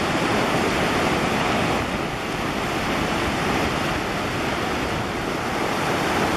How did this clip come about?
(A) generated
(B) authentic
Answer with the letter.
B